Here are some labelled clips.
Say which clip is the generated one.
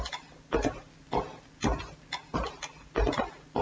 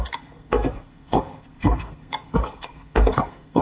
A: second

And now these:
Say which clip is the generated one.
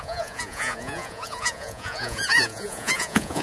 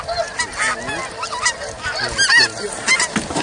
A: first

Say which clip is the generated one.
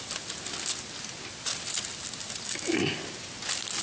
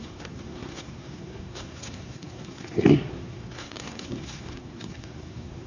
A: second